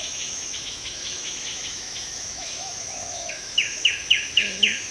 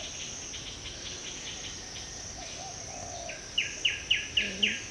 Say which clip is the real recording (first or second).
second